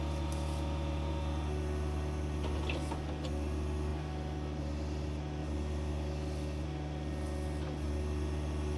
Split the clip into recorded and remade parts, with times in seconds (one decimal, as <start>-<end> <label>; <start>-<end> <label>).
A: 0.0-8.8 recorded